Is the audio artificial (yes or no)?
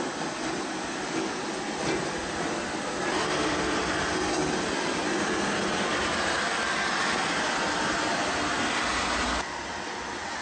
no